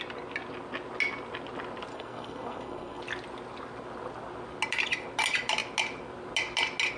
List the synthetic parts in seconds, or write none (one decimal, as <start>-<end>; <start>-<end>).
1.9-3.0